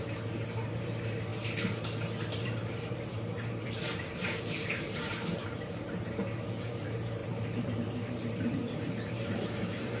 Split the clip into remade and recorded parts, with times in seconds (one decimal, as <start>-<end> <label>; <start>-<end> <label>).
0.0-1.3 remade; 1.3-2.4 recorded; 2.4-10.0 remade